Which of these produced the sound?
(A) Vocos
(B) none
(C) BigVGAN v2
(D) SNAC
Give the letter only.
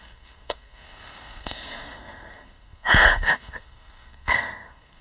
D